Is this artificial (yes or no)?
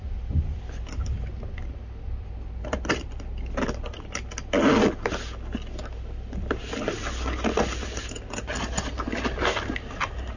no